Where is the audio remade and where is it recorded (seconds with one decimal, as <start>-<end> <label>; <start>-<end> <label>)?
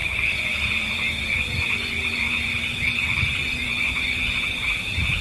0.0-2.6 remade; 2.6-3.4 recorded; 3.4-4.7 remade; 4.7-5.2 recorded